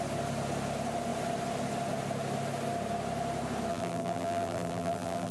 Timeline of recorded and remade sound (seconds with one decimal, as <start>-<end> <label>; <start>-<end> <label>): 0.0-3.7 recorded; 3.7-5.3 remade